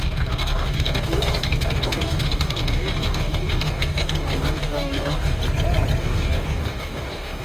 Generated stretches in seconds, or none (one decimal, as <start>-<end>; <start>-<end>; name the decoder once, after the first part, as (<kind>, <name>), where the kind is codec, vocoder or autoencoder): 0.0-5.4 (codec, DAC); 6.0-7.4

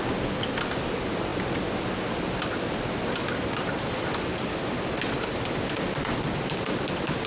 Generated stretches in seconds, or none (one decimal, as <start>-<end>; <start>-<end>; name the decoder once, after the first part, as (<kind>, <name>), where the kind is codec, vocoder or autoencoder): none